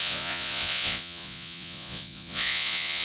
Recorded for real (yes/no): no